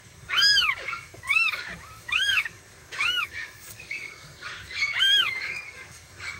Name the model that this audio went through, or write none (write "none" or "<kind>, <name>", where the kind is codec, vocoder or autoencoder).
codec, DAC